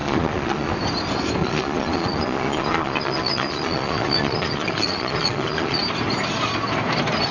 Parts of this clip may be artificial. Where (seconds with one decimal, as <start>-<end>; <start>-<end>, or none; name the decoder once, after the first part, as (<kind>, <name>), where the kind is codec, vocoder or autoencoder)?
0.0-0.7 (vocoder, Vocos); 1.4-5.8